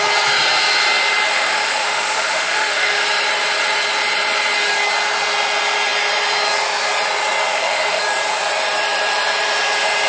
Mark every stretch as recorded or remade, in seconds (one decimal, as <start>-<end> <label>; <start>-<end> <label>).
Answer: 0.0-1.3 recorded; 1.3-3.0 remade; 3.0-7.5 recorded; 7.5-8.0 remade; 8.0-10.1 recorded